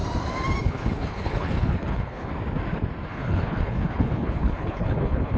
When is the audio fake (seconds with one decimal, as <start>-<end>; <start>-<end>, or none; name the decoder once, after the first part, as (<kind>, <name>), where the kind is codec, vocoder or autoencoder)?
0.6-2.3 (codec, HILCodec); 3.1-5.4